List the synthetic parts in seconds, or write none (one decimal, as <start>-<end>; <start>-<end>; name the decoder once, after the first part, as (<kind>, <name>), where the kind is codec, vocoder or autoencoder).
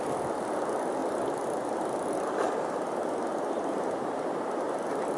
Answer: 1.0-4.1 (vocoder, BigVGAN v2)